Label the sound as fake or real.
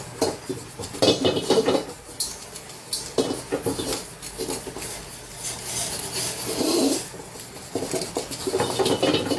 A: real